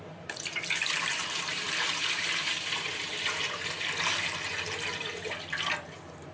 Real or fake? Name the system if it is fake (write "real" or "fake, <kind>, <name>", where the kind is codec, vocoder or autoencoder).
fake, vocoder, BigVGAN v2